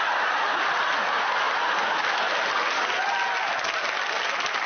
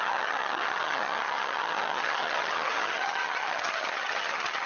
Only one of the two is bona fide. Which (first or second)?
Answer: first